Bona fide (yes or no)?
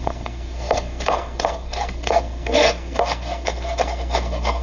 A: no